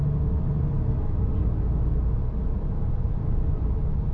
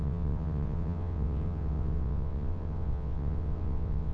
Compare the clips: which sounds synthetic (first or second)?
second